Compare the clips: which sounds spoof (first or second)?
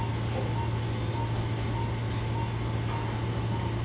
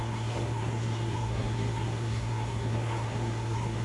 second